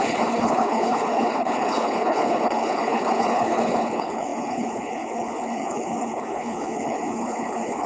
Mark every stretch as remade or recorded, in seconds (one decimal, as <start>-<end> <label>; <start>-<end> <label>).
0.0-7.9 remade